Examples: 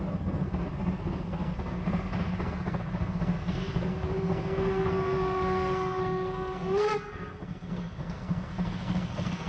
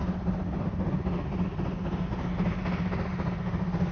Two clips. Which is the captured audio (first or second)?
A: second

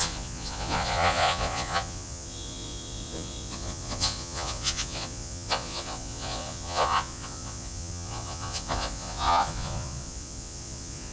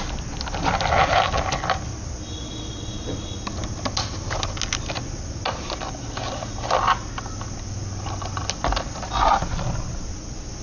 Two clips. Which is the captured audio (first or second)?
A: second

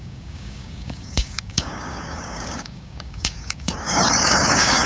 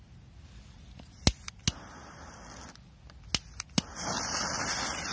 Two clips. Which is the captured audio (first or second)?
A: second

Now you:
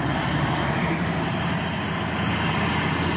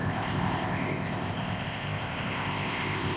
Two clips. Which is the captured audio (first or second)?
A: first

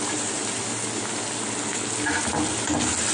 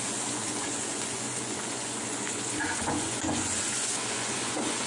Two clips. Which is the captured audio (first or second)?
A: first